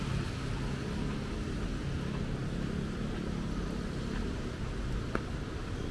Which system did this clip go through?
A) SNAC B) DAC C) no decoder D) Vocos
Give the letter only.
C